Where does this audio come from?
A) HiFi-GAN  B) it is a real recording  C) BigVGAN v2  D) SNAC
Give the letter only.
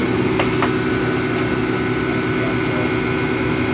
B